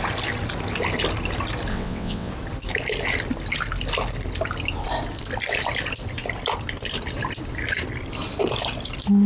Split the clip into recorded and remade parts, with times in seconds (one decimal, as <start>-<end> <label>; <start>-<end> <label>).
0.0-1.7 recorded; 1.7-2.3 remade; 2.3-9.3 recorded